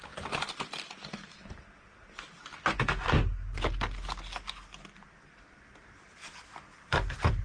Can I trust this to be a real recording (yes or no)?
yes